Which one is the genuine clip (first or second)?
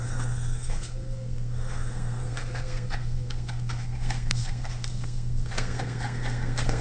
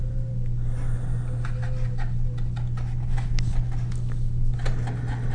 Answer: second